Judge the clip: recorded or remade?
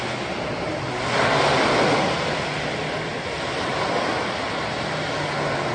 recorded